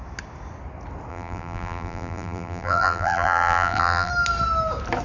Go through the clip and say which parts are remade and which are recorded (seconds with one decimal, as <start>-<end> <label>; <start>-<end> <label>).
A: 0.0-1.1 recorded; 1.1-4.1 remade; 4.1-5.0 recorded